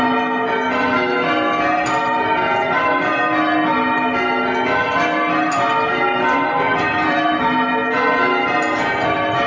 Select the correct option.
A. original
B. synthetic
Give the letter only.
A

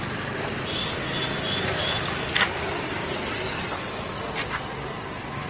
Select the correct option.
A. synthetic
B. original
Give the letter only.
B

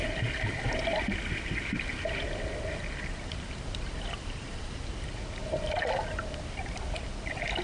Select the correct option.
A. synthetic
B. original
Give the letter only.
B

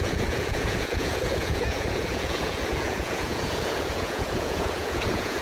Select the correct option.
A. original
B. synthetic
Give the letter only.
B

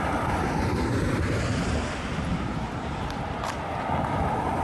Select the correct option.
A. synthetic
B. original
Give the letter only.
B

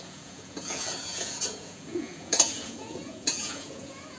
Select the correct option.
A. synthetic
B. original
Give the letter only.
A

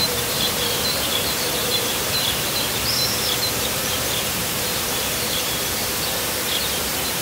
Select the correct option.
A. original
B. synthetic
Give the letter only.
B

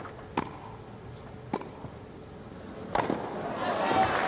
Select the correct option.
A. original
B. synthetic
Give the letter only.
A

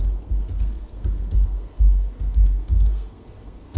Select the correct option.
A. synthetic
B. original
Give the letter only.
A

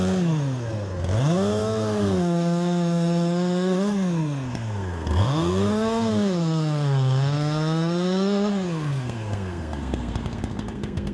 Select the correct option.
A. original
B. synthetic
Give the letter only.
B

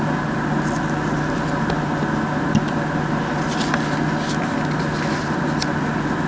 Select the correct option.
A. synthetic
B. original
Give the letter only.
B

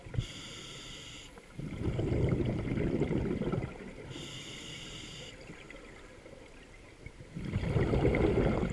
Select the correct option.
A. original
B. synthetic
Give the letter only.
A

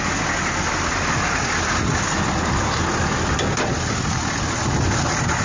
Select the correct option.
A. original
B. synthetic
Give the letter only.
A